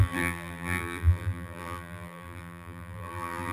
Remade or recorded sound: remade